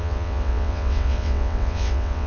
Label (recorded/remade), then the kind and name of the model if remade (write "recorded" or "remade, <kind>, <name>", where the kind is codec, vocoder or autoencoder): remade, vocoder, WaveNeXt